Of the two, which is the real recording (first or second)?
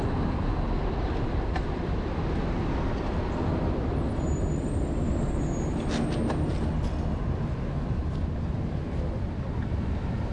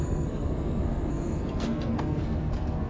first